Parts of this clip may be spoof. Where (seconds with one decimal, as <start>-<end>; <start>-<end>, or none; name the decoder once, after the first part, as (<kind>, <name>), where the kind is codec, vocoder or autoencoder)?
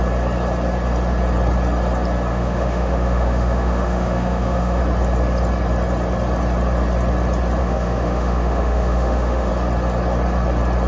2.3-4.8 (autoencoder, DAC-VAE); 7.6-9.5